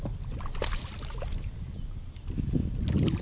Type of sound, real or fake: real